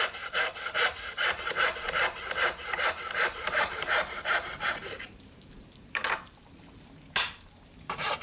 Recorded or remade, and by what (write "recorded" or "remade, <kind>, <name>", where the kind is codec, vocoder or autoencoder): remade, vocoder, BigVGAN v2